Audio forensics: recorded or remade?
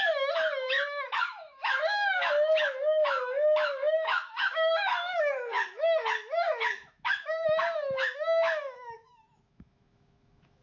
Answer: remade